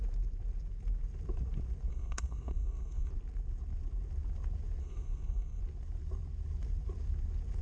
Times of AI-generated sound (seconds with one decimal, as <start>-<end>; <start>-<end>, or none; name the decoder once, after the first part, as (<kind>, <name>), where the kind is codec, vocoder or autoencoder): 1.9-3.1 (codec, SNAC); 4.8-5.6

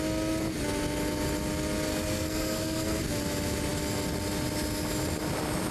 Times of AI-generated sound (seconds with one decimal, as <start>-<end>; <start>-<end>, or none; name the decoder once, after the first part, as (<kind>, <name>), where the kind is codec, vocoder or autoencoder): 1.9-3.0 (codec, SNAC)